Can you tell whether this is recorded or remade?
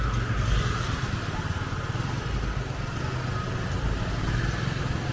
recorded